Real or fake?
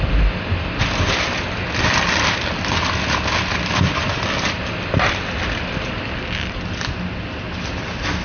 real